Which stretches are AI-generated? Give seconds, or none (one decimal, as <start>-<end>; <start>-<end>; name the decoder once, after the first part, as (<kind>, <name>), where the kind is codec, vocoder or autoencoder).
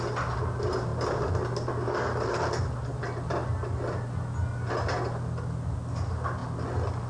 none